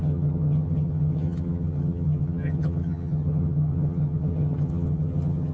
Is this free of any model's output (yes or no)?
no